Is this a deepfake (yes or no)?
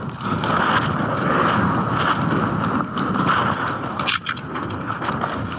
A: no